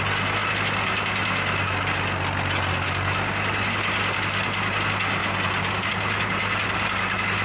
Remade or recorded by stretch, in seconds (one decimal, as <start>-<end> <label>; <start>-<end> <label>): 0.0-7.4 recorded